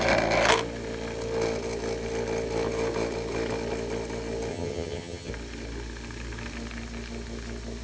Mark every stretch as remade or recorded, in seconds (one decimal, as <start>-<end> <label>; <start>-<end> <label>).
0.0-4.5 recorded; 4.5-5.3 remade; 5.3-7.8 recorded